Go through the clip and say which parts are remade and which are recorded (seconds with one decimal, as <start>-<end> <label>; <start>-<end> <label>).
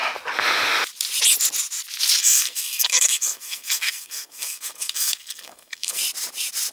0.0-2.2 recorded; 2.2-6.0 remade; 6.0-6.7 recorded